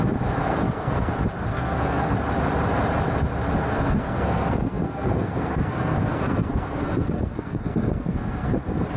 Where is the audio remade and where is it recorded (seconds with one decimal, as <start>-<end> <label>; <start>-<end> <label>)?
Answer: 0.0-0.4 recorded; 0.4-1.1 remade; 1.1-1.5 recorded; 1.5-2.1 remade; 2.1-3.6 recorded; 3.6-8.6 remade; 8.6-9.0 recorded